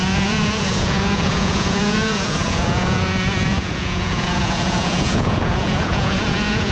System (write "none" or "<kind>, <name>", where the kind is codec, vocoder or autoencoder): vocoder, Vocos